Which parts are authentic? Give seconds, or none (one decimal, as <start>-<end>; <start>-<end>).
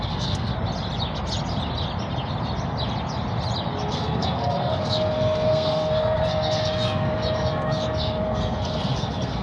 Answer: 0.5-3.9